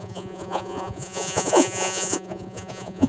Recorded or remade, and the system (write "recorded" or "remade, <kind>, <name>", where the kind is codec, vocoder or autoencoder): remade, vocoder, Vocos